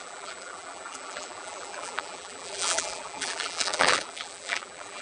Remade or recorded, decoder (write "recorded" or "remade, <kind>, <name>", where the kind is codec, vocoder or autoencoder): remade, vocoder, BigVGAN v2